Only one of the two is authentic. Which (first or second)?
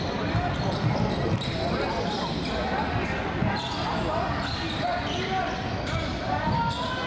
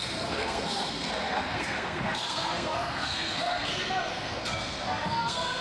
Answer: first